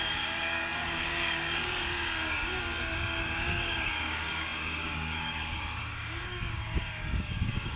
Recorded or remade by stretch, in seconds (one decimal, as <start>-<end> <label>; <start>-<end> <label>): 0.0-7.8 remade